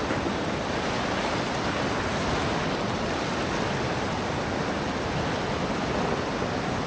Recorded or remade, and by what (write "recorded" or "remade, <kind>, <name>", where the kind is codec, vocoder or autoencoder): recorded